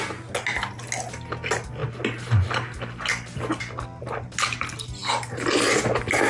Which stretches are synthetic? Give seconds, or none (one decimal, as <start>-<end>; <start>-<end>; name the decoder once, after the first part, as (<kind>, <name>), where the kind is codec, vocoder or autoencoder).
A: none